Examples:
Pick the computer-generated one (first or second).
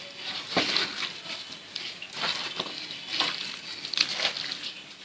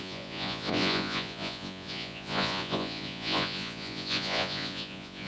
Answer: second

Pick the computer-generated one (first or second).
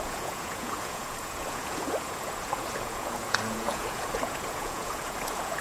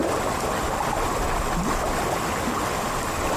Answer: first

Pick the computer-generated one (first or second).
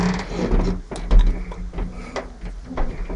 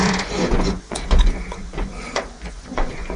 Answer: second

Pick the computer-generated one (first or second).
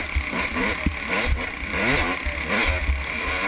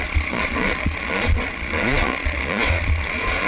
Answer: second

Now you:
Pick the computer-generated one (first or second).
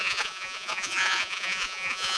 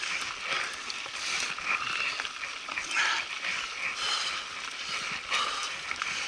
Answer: first